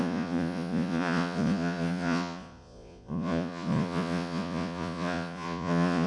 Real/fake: fake